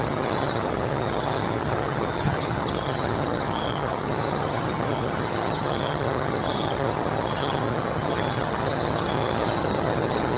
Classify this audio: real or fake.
fake